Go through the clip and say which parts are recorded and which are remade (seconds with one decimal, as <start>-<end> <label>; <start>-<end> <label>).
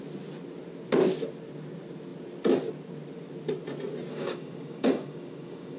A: 0.0-4.1 recorded; 4.1-5.8 remade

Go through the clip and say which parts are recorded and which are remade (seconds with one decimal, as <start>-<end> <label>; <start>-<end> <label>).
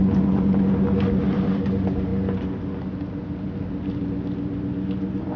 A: 0.0-5.4 recorded